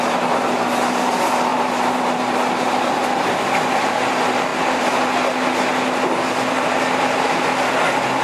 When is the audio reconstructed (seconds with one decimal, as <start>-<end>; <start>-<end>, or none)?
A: 1.5-2.2; 4.5-5.0